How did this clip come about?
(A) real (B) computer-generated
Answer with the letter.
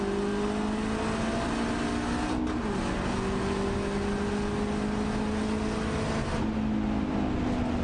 A